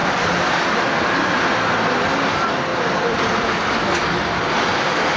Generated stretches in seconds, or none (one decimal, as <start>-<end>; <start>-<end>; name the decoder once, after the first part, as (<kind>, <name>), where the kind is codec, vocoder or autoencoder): 0.0-0.8 (vocoder, BigVGAN v2); 2.7-3.8